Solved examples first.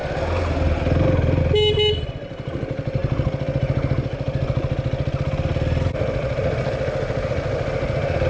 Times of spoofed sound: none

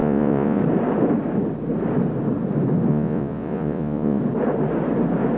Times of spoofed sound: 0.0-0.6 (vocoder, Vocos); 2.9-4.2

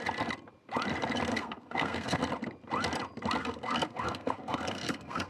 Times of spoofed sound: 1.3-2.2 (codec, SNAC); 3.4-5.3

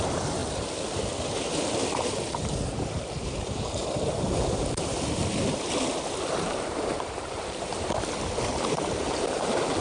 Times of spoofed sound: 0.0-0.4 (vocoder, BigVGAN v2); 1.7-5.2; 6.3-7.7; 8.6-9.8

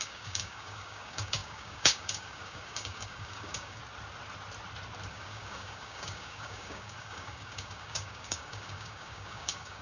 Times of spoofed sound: 0.0-3.8 (codec, DAC); 5.1-9.8